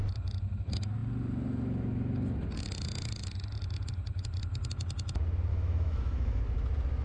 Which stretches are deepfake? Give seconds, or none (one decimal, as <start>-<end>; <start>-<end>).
5.5-6.4